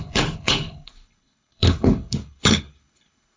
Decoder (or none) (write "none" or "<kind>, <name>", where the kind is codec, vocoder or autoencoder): codec, HILCodec